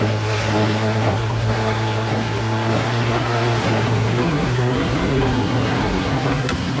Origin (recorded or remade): remade